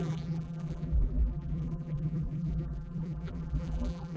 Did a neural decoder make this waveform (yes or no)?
yes